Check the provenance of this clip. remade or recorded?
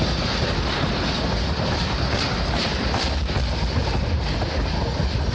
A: recorded